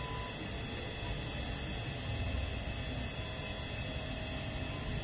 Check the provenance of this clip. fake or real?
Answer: real